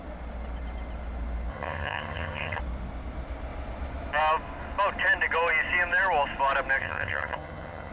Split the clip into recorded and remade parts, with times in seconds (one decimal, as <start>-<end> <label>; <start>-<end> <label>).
0.0-1.5 recorded; 1.5-2.6 remade; 2.6-6.8 recorded; 6.8-7.9 remade